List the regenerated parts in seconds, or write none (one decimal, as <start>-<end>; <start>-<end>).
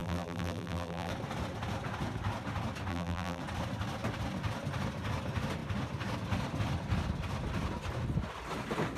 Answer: 0.0-1.1; 2.9-3.4